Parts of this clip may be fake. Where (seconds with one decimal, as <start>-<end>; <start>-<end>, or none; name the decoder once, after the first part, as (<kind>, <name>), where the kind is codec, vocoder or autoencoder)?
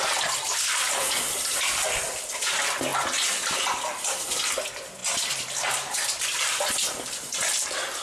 none